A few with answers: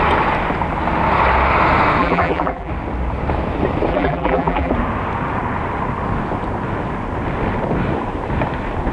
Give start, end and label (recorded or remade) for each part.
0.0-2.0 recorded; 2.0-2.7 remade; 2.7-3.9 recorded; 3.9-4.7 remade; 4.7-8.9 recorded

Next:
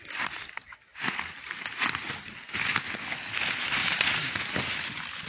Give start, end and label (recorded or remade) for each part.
0.0-0.9 recorded; 0.9-2.3 remade; 2.3-3.8 recorded; 3.8-4.5 remade; 4.5-5.3 recorded